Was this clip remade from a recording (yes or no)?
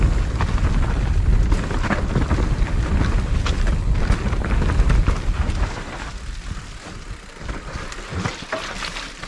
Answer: no